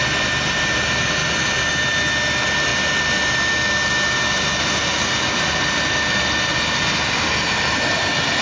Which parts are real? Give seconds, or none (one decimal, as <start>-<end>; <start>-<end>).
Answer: 0.0-8.4

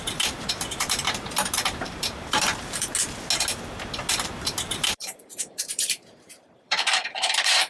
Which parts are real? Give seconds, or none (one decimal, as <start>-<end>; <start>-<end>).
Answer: 2.8-4.1